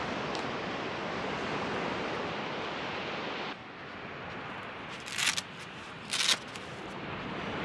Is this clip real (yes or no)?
yes